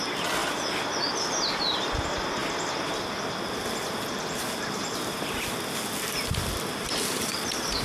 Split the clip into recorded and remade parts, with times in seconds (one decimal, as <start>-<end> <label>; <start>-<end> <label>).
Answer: 0.0-6.4 recorded; 6.4-7.8 remade